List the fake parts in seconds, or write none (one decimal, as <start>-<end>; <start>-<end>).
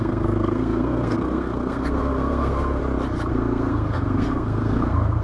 0.0-2.8; 3.3-5.2